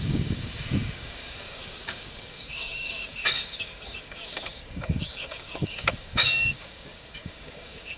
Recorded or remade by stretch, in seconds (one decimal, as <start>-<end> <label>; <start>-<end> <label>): 0.0-8.0 remade